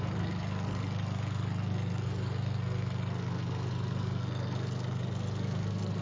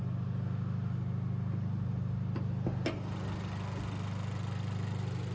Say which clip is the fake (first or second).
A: first